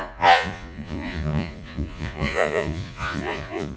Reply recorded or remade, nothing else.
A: remade